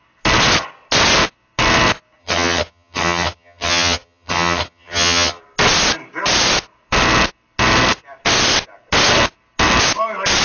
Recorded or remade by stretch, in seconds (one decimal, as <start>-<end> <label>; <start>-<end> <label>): 0.0-2.2 recorded; 2.2-5.4 remade; 5.4-10.4 recorded